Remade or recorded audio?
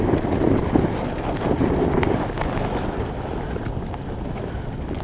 recorded